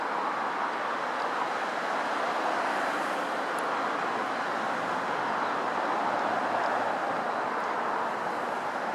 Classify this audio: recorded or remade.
recorded